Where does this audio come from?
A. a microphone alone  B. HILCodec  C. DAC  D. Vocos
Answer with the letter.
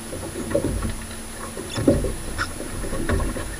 A